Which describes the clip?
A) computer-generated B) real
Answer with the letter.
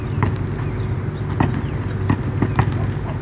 B